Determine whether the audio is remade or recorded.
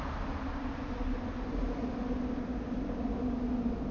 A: recorded